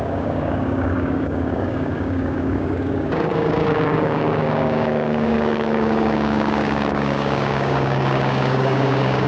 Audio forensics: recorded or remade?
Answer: remade